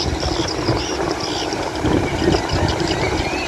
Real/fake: real